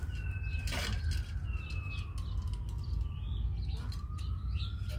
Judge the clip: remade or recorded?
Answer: recorded